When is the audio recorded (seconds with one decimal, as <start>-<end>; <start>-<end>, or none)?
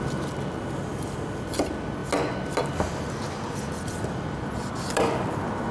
0.0-5.7